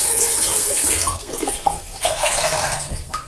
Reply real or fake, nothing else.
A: fake